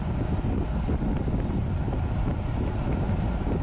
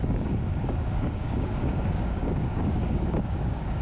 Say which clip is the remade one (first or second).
second